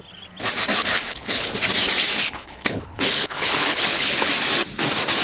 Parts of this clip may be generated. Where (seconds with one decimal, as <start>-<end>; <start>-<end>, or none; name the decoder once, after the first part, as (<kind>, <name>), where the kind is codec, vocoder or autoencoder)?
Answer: 0.8-1.5 (codec, HILCodec); 2.2-4.3